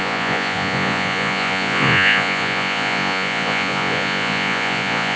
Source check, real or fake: fake